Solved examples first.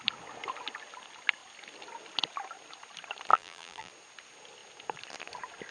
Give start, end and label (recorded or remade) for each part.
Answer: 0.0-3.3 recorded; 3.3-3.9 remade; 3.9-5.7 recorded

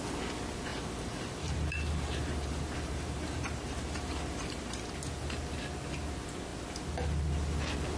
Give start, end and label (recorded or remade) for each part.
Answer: 0.0-0.7 recorded; 0.7-4.6 remade; 4.6-8.0 recorded

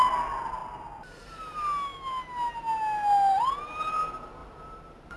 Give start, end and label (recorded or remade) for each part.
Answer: 0.0-4.4 recorded; 4.4-5.2 remade

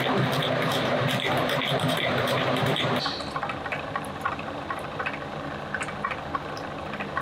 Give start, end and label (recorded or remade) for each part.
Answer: 0.0-0.7 recorded; 0.7-5.0 remade; 5.0-7.2 recorded